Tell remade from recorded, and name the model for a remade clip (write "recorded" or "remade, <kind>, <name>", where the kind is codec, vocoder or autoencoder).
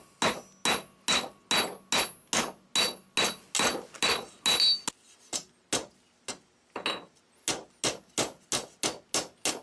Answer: recorded